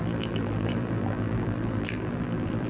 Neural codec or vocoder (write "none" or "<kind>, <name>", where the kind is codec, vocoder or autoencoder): vocoder, BigVGAN v2